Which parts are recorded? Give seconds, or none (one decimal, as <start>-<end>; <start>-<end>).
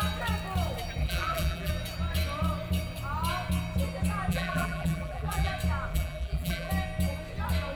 0.0-1.0; 1.7-4.3; 5.5-5.9; 6.7-7.8